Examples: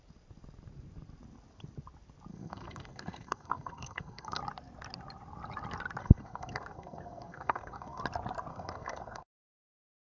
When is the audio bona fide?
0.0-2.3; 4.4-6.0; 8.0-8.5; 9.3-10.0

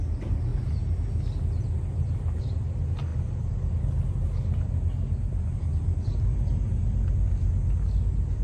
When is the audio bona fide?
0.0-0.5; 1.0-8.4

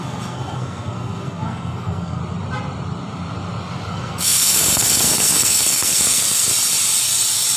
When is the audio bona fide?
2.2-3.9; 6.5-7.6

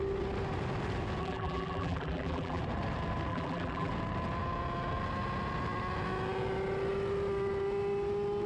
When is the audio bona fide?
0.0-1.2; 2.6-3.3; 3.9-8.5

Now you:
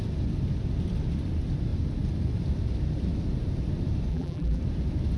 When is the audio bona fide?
0.0-4.1; 4.6-5.2

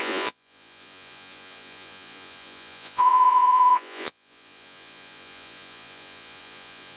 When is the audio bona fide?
none